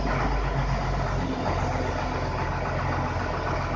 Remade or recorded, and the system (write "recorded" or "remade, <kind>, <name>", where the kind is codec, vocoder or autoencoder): recorded